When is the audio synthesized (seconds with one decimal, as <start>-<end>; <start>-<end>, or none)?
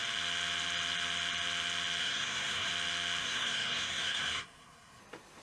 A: 2.0-2.7; 3.2-5.0